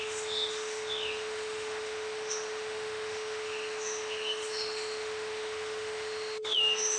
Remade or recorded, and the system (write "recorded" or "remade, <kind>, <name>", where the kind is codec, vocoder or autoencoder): remade, autoencoder, DAC-VAE